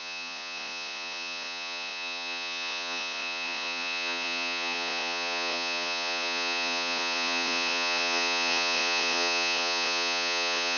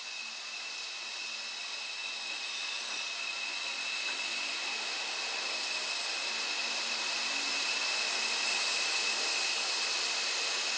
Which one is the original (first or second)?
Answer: second